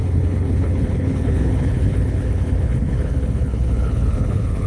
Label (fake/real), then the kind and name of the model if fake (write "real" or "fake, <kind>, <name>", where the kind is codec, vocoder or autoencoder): fake, codec, HILCodec